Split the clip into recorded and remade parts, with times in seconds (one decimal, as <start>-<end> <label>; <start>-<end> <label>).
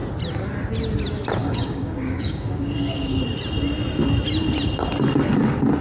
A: 0.0-1.4 recorded; 1.4-3.2 remade; 3.2-5.8 recorded